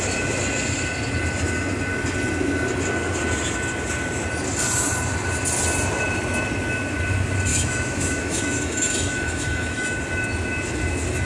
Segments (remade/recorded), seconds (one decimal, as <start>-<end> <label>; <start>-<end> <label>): 0.0-7.5 recorded; 7.5-10.0 remade; 10.0-11.3 recorded